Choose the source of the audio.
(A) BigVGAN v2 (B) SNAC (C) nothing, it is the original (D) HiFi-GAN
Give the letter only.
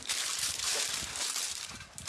A